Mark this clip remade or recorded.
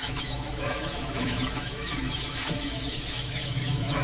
remade